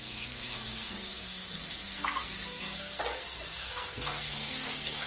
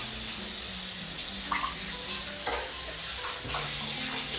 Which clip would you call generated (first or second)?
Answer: first